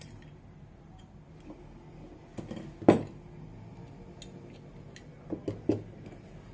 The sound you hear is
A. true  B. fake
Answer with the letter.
A